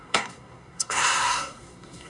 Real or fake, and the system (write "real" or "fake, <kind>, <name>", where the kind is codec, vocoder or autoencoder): fake, codec, SNAC